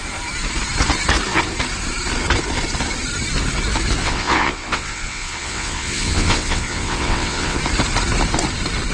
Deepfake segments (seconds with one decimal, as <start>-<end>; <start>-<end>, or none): 4.0-7.6